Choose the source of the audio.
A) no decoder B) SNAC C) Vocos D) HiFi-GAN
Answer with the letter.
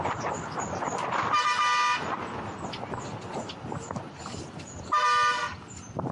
A